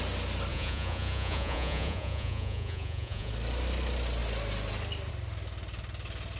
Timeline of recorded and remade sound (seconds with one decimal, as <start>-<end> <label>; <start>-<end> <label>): 0.0-0.5 recorded; 0.5-3.3 remade; 3.3-6.4 recorded